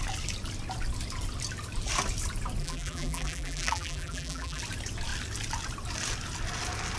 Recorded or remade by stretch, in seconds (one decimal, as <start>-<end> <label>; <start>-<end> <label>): 0.0-2.6 recorded; 2.6-4.6 remade; 4.6-7.0 recorded